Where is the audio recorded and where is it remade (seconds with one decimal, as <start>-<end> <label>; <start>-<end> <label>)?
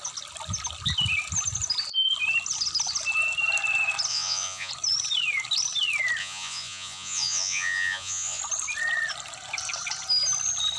0.0-4.1 recorded; 4.1-4.7 remade; 4.7-6.2 recorded; 6.2-8.4 remade; 8.4-10.8 recorded